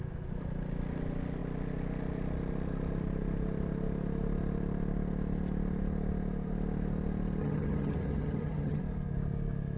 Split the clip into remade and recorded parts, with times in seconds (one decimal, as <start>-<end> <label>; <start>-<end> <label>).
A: 0.0-7.4 recorded; 7.4-8.8 remade; 8.8-9.8 recorded